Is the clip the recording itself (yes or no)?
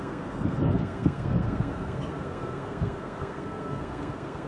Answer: no